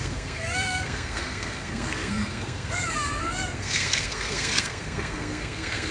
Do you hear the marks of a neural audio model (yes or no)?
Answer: yes